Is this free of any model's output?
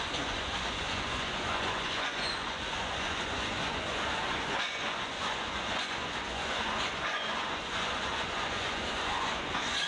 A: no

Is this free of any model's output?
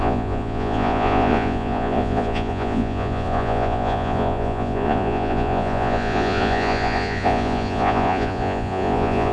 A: no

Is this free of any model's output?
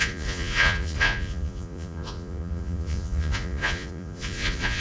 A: no